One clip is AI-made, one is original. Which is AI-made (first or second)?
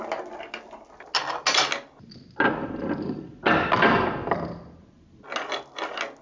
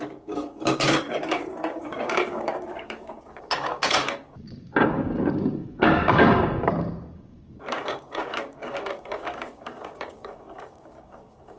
second